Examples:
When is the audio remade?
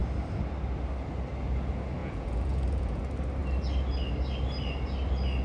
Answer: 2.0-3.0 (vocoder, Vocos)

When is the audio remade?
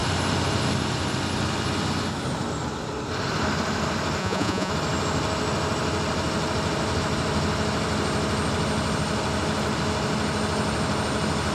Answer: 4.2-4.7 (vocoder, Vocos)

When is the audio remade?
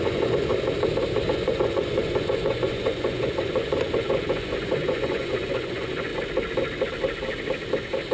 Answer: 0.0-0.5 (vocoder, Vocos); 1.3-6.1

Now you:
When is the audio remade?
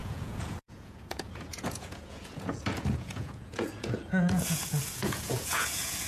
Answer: 0.0-6.1 (vocoder, Vocos)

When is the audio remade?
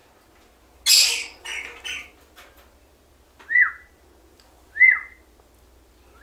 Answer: none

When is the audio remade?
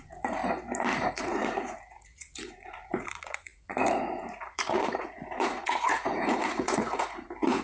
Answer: 0.0-0.4 (vocoder, Vocos); 1.0-7.6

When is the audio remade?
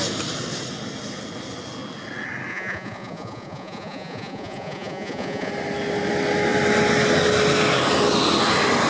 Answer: 2.5-5.5 (vocoder, Vocos)